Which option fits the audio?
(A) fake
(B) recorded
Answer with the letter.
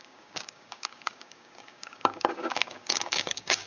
A